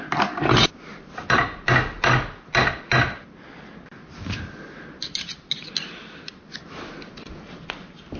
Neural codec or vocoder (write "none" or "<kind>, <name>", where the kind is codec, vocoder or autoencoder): none